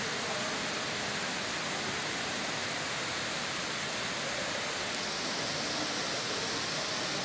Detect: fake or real real